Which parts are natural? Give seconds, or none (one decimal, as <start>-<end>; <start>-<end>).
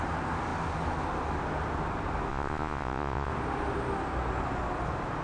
0.0-2.3; 3.3-5.2